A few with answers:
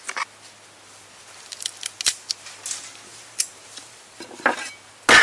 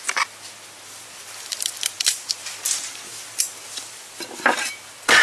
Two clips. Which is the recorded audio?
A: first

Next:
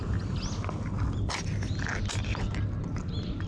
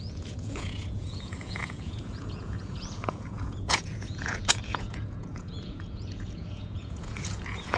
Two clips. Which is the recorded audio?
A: first